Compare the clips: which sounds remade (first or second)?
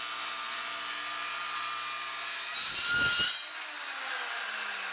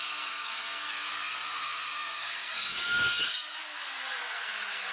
second